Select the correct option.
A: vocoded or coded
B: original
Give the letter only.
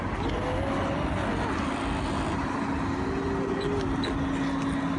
B